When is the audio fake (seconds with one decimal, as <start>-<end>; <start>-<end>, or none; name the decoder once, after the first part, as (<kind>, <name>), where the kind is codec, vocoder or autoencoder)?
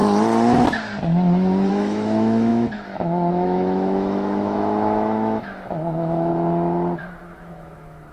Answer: 1.7-6.3 (autoencoder, DAC-VAE); 7.0-8.1